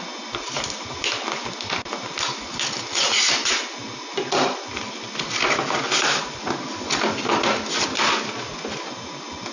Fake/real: real